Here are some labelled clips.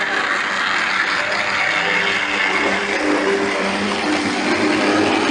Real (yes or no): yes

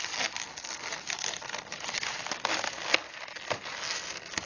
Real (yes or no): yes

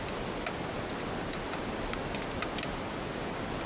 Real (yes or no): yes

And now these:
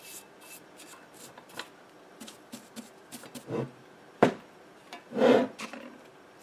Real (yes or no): yes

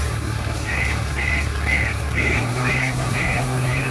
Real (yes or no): no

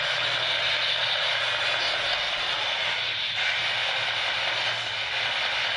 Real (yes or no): yes